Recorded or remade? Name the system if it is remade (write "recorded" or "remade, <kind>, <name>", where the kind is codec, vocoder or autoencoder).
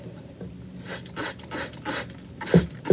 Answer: recorded